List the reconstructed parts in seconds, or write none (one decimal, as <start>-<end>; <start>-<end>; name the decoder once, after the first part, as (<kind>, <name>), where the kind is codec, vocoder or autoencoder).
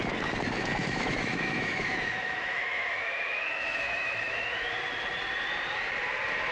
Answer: 0.8-4.7 (autoencoder, DAC-VAE)